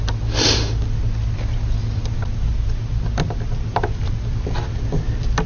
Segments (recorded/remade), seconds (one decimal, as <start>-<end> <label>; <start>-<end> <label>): 0.0-5.5 recorded